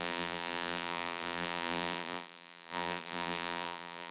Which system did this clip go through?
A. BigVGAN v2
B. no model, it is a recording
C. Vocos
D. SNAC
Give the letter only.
A